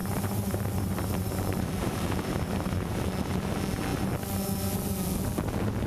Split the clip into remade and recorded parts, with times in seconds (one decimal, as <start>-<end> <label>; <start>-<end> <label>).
0.0-3.0 remade; 3.0-5.9 recorded